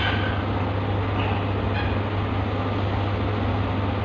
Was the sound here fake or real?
real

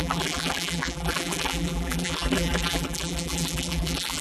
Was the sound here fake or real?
fake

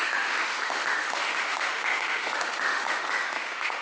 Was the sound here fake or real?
fake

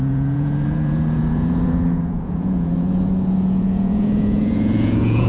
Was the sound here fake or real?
fake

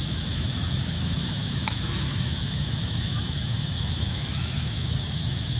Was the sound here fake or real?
fake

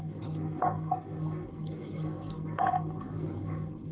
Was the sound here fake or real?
fake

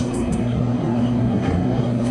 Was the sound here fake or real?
fake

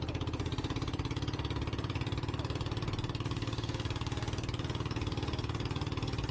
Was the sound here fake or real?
real